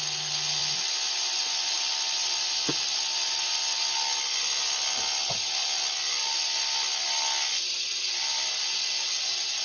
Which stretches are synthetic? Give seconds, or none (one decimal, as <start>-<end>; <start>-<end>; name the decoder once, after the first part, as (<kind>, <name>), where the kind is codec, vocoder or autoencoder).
none